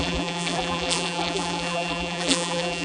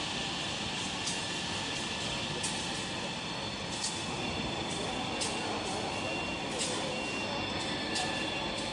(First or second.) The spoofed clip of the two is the first